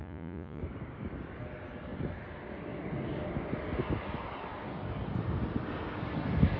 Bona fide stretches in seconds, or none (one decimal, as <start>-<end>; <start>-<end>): 0.6-6.6